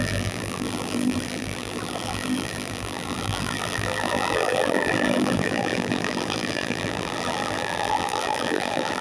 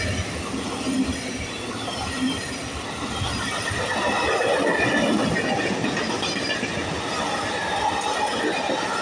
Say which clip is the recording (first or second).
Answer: second